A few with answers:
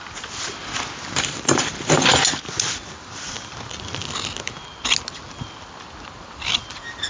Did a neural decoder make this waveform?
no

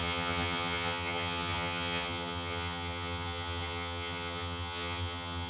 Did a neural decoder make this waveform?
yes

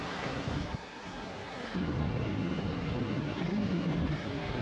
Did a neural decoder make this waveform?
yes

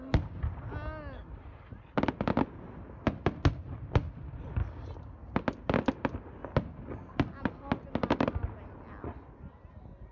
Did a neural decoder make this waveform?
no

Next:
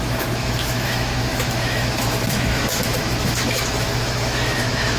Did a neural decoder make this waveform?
yes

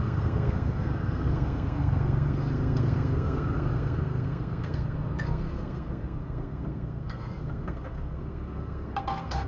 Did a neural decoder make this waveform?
yes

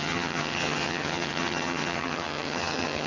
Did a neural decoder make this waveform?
yes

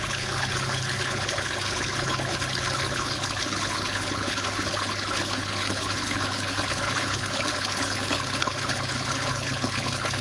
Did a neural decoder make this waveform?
yes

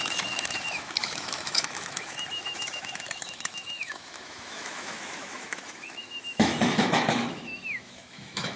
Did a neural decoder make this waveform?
yes